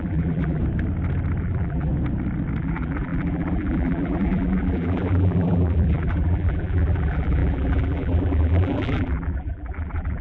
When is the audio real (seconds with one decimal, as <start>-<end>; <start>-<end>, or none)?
0.6-1.4; 1.9-2.6

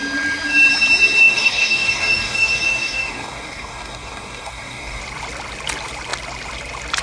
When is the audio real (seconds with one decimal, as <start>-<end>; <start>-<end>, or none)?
0.0-1.2; 5.0-7.0

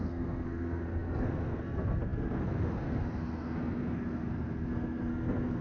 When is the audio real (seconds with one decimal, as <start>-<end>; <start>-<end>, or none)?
none

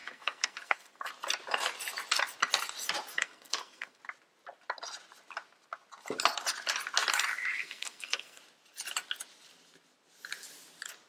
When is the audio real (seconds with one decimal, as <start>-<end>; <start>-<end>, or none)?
1.1-3.1; 4.0-7.6; 8.4-11.1

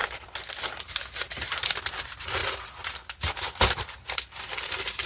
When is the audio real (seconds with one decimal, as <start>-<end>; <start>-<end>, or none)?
0.0-5.1

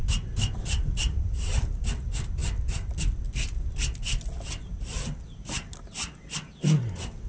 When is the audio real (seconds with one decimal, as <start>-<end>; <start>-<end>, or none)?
0.0-7.3

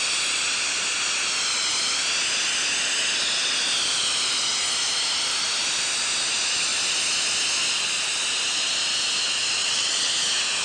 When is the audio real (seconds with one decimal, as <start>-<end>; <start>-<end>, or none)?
0.0-9.6; 10.1-10.6